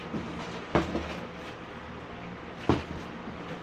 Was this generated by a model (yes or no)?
no